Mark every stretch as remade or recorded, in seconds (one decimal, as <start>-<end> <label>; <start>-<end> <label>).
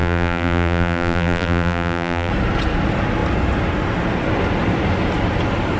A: 0.0-2.3 remade; 2.3-5.8 recorded